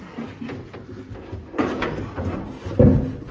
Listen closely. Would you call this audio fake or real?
real